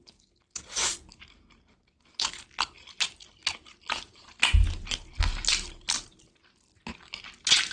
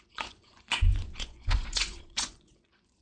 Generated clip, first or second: second